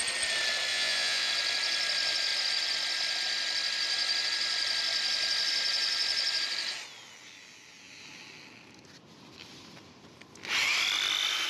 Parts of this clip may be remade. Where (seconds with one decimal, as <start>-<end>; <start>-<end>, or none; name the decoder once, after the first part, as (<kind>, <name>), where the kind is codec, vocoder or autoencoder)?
0.7-1.3 (vocoder, Vocos)